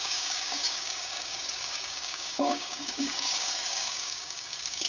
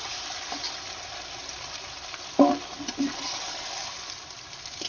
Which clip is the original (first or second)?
second